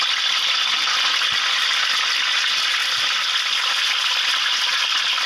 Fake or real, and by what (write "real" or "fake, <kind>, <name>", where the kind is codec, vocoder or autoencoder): real